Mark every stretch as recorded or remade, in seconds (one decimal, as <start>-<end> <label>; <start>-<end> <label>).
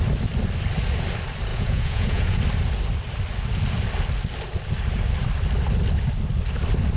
0.0-1.5 recorded; 1.5-2.4 remade; 2.4-7.0 recorded